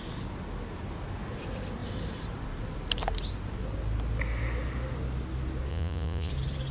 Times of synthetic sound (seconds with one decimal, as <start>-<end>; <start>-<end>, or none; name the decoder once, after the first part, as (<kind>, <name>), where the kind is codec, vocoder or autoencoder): 5.7-6.3 (vocoder, Vocos)